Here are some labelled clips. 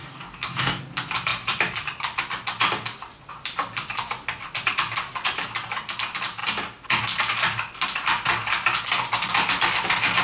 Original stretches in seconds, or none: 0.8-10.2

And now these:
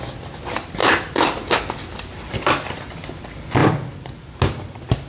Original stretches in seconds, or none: 0.0-5.1

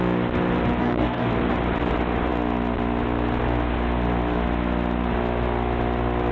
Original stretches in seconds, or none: 0.0-0.8; 1.3-6.3

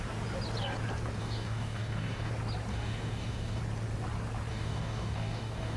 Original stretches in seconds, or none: 0.0-1.2; 2.3-2.7; 3.6-4.5

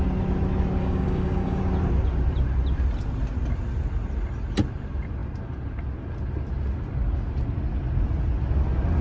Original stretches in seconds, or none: 0.0-0.8; 1.6-9.0